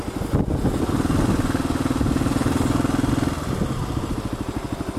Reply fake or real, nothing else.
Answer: real